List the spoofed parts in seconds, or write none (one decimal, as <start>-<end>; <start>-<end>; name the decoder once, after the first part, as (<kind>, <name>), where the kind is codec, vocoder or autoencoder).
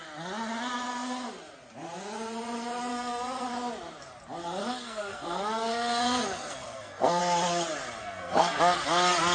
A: 2.9-3.5 (codec, SNAC); 4.6-7.2; 8.0-8.6